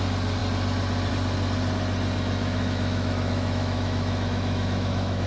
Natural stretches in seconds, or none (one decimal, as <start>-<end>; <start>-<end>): 0.0-2.4